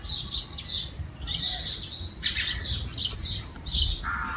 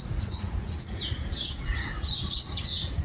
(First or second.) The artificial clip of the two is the second